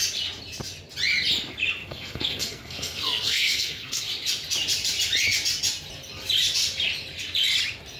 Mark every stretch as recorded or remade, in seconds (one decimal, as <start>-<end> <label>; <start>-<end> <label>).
0.0-1.8 recorded; 1.8-4.0 remade; 4.0-8.0 recorded